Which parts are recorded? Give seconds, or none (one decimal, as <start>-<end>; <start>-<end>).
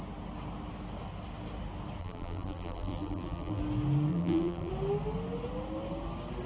0.0-2.0; 3.6-4.1; 4.7-6.5